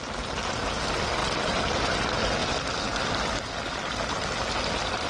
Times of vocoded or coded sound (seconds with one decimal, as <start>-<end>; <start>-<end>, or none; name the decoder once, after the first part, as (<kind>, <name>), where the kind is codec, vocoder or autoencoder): none

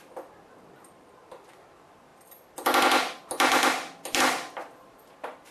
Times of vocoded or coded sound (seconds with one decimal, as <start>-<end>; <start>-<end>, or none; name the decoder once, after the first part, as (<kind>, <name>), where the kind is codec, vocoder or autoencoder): none

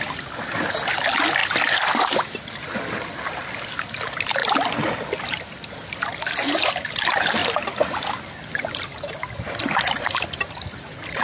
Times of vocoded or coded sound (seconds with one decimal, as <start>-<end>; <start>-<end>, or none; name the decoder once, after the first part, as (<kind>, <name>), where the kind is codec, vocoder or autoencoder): 1.4-2.2 (vocoder, BigVGAN v2)

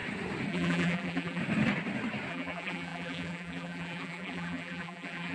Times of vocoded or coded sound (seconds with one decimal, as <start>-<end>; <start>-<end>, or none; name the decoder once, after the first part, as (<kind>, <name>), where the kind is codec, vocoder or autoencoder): 0.5-1.4 (vocoder, BigVGAN v2); 2.3-5.3

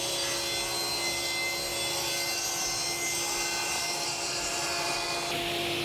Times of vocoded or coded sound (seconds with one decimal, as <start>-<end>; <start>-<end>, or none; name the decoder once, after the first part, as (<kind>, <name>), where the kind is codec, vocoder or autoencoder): 3.6-4.9 (vocoder, BigVGAN v2)

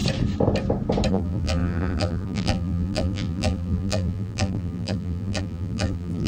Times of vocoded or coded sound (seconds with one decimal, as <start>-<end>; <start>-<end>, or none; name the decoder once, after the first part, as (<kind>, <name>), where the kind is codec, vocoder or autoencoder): 1.1-6.3 (vocoder, BigVGAN v2)

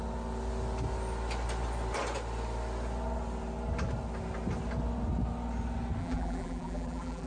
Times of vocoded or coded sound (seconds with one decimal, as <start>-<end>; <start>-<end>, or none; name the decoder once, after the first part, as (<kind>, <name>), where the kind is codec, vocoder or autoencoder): 6.0-7.3 (vocoder, BigVGAN v2)

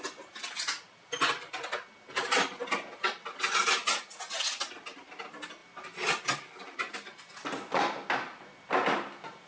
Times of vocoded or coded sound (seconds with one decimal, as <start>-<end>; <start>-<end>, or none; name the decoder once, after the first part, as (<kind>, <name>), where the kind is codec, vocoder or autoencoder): 5.6-6.9 (vocoder, BigVGAN v2)